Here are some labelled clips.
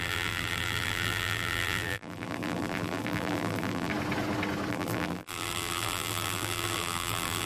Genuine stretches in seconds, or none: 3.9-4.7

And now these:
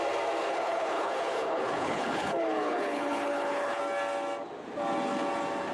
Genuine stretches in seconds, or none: 0.0-0.4; 3.8-5.7

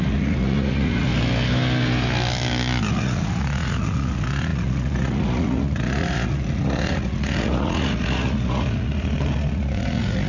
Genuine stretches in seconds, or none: 1.1-2.9

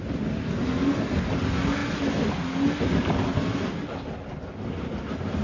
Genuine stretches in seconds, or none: 0.0-5.4

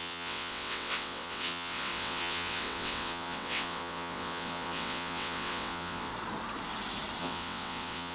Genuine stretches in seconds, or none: 6.1-7.2